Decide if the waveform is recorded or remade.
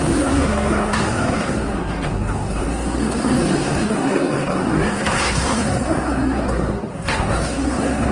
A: remade